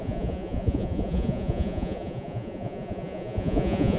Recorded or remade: remade